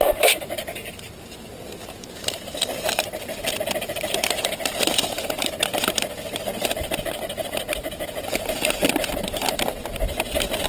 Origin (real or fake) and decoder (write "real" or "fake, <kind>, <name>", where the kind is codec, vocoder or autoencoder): fake, vocoder, BigVGAN v2